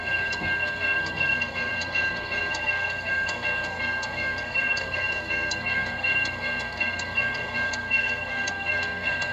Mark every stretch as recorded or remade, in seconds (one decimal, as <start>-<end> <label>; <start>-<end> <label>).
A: 0.0-9.3 remade